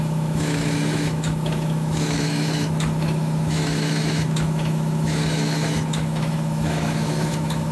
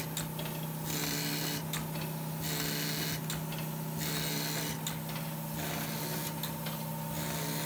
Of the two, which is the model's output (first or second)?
first